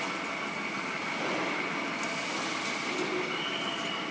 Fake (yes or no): no